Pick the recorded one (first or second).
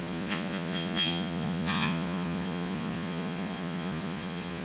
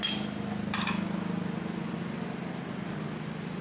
second